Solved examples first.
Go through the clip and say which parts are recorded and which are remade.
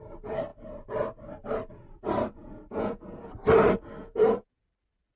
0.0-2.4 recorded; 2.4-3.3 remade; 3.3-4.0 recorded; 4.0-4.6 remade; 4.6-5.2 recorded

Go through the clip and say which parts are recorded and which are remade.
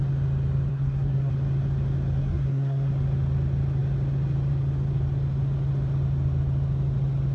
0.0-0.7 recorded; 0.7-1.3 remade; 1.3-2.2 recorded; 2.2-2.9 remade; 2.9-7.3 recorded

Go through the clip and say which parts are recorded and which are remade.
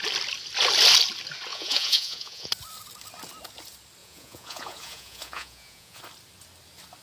0.0-1.5 recorded; 1.5-2.5 remade; 2.5-4.0 recorded; 4.0-6.0 remade; 6.0-7.0 recorded